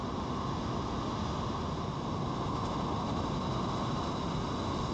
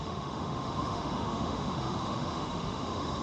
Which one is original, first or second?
first